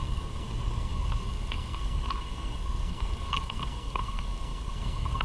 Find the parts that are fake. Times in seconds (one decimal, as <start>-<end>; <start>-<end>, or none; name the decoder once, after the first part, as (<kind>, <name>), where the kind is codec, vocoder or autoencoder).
0.0-5.2 (codec, SNAC)